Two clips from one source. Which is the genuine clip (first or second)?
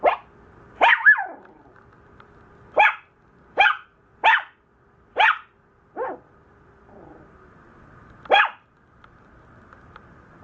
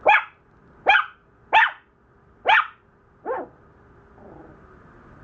second